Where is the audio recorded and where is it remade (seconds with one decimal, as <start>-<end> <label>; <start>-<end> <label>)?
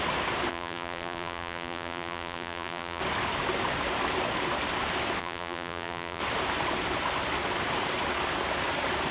0.0-0.5 recorded; 0.5-3.0 remade; 3.0-5.2 recorded; 5.2-6.2 remade; 6.2-9.1 recorded